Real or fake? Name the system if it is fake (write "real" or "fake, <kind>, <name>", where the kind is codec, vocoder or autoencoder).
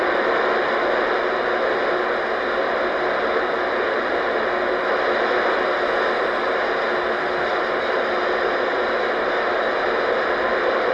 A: real